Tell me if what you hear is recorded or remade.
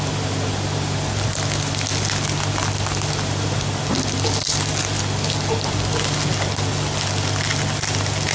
recorded